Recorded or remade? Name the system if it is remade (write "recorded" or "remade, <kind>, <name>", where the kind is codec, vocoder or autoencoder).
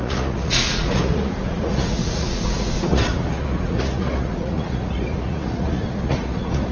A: remade, vocoder, Vocos